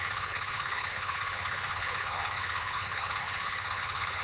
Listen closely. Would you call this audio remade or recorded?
remade